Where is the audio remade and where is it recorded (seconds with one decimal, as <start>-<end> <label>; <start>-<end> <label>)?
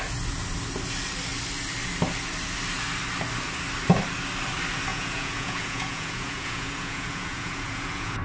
0.0-4.9 recorded; 4.9-8.2 remade